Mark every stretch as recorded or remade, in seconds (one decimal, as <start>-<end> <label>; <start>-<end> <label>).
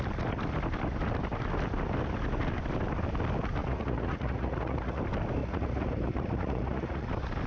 0.0-3.6 recorded; 3.6-5.0 remade; 5.0-5.4 recorded; 5.4-7.1 remade; 7.1-7.5 recorded